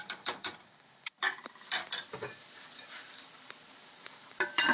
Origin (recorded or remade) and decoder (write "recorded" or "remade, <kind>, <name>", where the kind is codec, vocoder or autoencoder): remade, vocoder, BigVGAN v2